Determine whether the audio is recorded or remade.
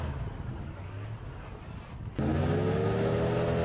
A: recorded